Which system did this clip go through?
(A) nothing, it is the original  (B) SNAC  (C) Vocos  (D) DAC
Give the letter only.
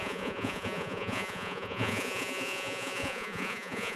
C